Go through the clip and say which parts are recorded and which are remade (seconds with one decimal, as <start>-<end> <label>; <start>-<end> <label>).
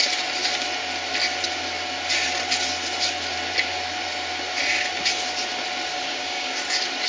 0.0-5.9 recorded; 5.9-6.5 remade; 6.5-7.1 recorded